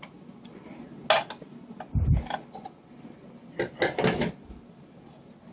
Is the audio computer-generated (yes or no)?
no